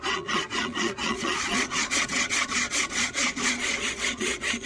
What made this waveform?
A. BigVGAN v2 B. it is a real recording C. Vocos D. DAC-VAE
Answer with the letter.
C